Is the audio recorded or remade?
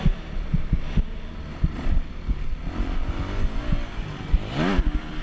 recorded